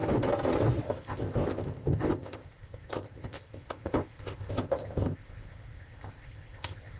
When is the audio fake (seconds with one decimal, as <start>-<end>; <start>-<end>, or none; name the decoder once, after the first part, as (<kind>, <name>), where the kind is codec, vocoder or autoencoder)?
0.8-7.0 (codec, ZipCodec)